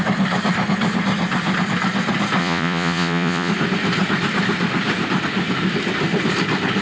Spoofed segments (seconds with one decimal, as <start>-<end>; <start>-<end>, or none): 2.4-3.5